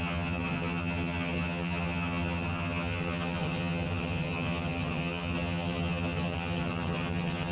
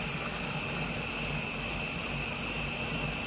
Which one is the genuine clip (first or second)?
second